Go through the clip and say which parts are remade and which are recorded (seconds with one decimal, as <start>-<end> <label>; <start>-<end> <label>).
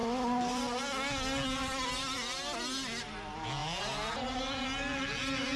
0.0-5.6 recorded